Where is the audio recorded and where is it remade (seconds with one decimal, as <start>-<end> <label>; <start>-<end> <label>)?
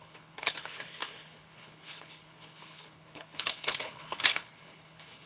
0.0-5.3 remade